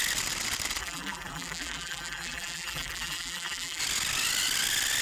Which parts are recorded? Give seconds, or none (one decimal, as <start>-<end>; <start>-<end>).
0.0-0.8; 3.8-5.0